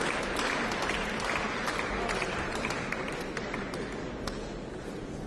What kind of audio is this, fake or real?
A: real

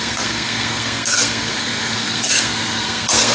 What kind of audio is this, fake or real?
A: fake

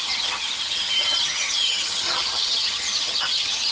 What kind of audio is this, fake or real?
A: fake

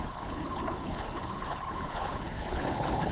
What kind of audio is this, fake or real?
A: fake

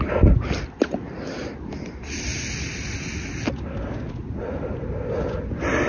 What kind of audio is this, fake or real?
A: real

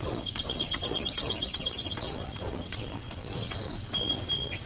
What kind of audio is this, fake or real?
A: fake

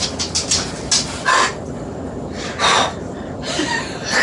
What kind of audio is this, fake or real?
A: real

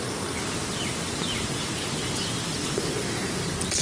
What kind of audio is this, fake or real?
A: real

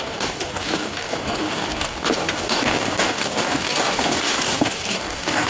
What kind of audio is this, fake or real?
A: fake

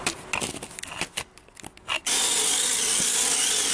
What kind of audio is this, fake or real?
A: real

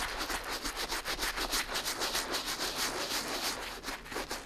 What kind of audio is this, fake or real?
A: real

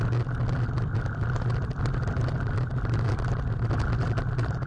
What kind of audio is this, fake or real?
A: real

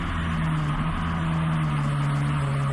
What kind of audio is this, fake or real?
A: real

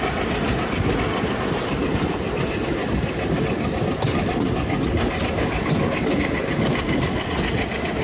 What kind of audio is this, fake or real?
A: real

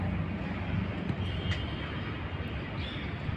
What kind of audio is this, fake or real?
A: real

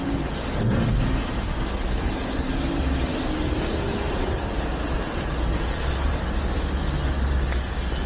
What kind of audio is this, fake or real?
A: real